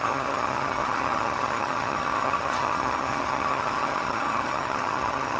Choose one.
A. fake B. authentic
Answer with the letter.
A